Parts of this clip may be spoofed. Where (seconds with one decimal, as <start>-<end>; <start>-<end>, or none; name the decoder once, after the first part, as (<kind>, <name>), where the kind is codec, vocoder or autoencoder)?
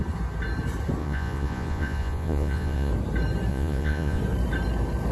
1.0-2.9 (vocoder, Vocos); 3.5-4.2